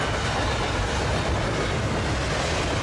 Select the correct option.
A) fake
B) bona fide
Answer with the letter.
B